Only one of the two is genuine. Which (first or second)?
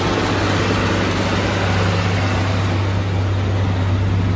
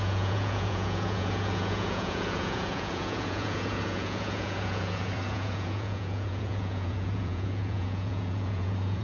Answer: first